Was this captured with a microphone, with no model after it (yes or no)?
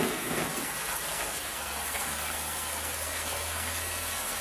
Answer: no